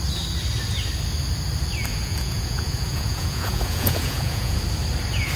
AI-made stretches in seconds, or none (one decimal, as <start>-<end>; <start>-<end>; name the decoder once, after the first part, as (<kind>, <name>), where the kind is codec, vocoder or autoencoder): 1.9-4.6 (vocoder, Vocos)